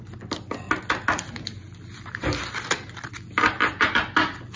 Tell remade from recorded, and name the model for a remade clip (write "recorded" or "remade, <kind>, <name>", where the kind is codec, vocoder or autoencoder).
recorded